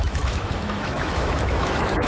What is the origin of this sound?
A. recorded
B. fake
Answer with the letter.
B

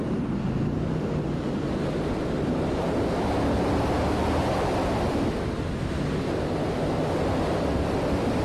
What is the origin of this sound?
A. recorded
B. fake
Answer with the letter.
A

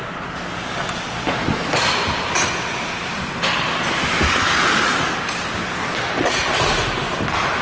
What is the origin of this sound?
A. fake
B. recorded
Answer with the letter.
B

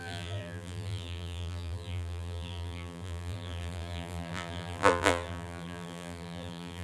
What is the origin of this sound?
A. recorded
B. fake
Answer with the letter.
B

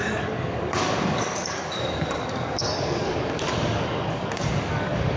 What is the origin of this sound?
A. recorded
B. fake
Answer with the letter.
B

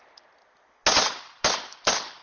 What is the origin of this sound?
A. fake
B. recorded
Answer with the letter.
B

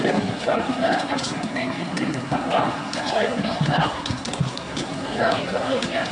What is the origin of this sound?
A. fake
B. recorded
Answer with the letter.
A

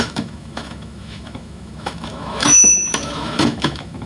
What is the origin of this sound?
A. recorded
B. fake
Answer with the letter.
B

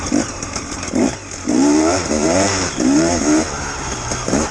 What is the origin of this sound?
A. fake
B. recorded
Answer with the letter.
A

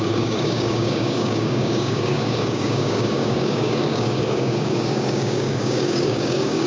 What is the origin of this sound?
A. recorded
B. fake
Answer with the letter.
B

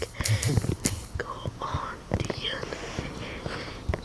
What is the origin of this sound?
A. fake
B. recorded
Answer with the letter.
B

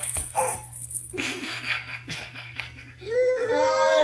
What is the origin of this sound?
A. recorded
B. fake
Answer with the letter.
B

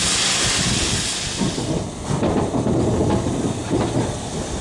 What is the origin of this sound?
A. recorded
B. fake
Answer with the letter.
A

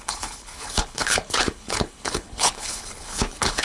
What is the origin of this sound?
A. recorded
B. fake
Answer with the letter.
B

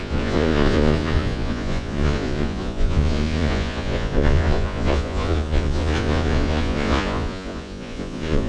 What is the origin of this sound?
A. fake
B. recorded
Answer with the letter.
A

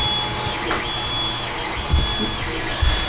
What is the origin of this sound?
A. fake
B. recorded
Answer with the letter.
B